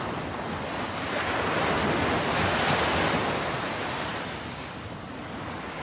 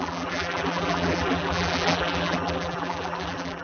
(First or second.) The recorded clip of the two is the first